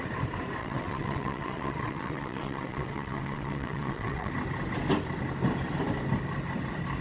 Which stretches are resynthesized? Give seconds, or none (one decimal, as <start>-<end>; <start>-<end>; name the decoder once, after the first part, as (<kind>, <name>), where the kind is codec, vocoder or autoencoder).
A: 0.6-4.3 (vocoder, WaveNeXt)